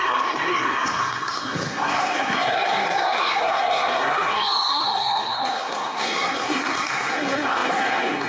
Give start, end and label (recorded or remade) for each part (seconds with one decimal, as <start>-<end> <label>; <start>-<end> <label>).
0.0-8.3 remade